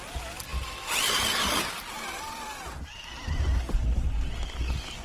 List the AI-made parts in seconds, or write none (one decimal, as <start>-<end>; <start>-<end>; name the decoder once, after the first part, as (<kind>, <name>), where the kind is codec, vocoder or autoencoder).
none